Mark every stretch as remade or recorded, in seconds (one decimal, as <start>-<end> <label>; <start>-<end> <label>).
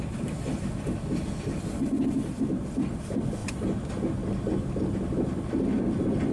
0.0-6.3 recorded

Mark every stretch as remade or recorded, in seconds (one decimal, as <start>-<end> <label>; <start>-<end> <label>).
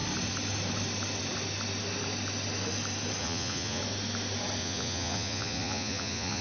0.0-3.2 recorded; 3.2-3.8 remade; 3.8-4.6 recorded; 4.6-6.4 remade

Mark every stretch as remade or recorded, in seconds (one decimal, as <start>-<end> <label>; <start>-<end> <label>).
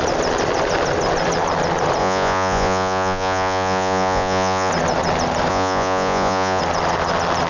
0.0-2.0 recorded; 2.0-4.7 remade; 4.7-5.5 recorded; 5.5-6.6 remade; 6.6-7.5 recorded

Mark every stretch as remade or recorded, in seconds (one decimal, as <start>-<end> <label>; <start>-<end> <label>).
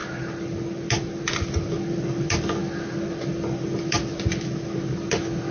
0.0-5.5 recorded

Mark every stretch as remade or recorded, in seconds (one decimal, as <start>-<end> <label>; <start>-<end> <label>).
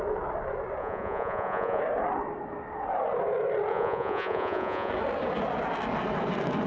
0.0-0.8 recorded; 0.8-1.8 remade; 1.8-3.7 recorded; 3.7-4.9 remade; 4.9-6.7 recorded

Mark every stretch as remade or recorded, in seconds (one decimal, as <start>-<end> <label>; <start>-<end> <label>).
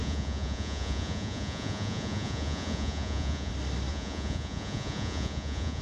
0.0-3.5 remade; 3.5-3.9 recorded; 3.9-5.8 remade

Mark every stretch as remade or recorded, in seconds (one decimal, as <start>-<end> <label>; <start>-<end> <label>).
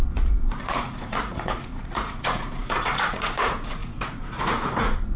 0.0-5.2 remade